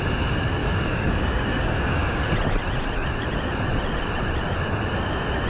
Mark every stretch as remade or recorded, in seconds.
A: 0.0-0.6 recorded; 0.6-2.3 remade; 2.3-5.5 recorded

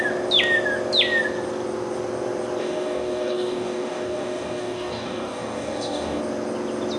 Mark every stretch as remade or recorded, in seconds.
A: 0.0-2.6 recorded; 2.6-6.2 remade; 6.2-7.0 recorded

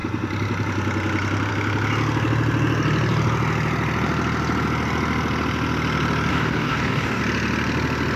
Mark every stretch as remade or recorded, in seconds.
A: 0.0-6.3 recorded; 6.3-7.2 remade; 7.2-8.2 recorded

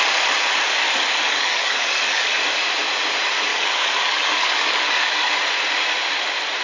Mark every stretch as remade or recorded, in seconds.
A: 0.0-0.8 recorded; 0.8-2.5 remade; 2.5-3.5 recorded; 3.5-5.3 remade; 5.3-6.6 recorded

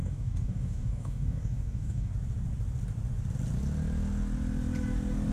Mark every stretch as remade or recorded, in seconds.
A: 0.0-2.1 remade; 2.1-5.3 recorded

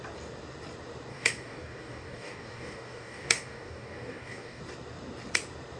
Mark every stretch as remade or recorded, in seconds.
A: 0.0-1.1 recorded; 1.1-4.6 remade; 4.6-5.8 recorded